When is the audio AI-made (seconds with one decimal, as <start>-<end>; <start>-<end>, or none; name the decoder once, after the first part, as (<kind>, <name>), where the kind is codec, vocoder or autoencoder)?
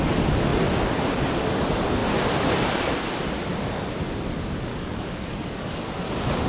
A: 4.7-5.7 (codec, DAC)